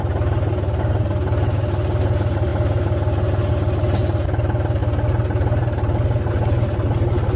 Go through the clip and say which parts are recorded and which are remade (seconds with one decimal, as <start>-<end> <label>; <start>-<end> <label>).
0.0-7.4 recorded